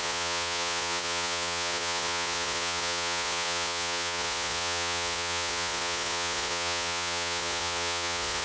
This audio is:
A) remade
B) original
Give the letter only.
A